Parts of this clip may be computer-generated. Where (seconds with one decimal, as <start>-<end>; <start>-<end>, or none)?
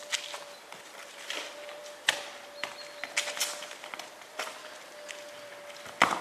none